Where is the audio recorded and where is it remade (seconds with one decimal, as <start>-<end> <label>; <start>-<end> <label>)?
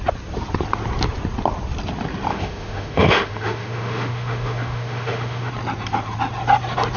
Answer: 0.0-2.3 recorded; 2.3-5.5 remade; 5.5-7.0 recorded